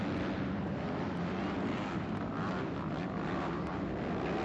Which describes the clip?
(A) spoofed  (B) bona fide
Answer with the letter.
B